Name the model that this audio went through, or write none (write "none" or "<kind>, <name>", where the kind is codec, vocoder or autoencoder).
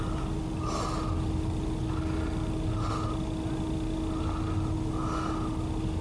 none